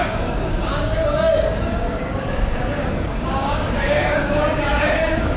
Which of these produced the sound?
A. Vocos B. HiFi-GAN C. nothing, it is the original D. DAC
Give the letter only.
D